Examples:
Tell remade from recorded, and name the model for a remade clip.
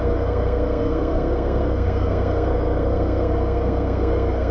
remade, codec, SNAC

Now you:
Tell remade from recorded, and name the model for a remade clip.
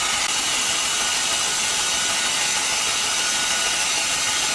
recorded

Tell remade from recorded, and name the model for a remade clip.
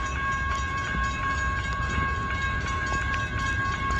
remade, vocoder, BigVGAN v2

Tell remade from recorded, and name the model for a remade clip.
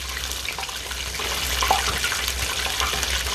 recorded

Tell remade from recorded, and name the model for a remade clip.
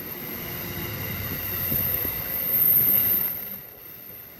remade, vocoder, BigVGAN v2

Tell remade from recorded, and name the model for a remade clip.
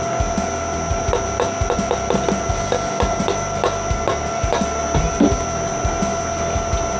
recorded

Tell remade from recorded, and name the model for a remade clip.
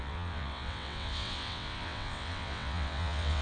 remade, vocoder, WaveNeXt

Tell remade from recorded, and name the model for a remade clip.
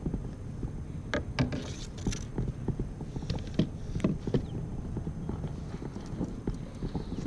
recorded